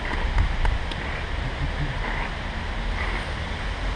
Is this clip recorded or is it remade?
recorded